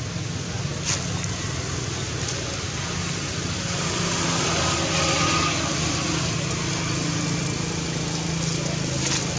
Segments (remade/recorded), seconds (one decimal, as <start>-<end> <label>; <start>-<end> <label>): 0.0-9.4 recorded